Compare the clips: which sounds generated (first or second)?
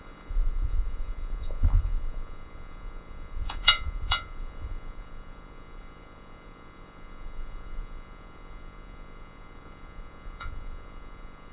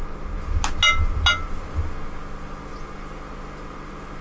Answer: first